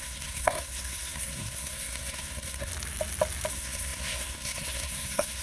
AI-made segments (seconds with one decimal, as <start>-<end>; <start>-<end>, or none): 0.0-2.7; 3.5-5.4